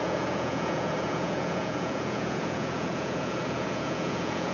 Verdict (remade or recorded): remade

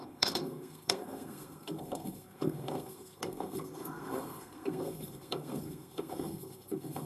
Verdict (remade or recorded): remade